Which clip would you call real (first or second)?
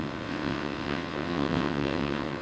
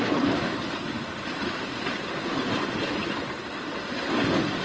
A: second